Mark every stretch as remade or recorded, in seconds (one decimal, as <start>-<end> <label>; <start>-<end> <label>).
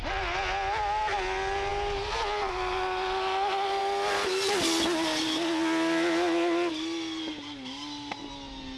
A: 0.0-8.8 recorded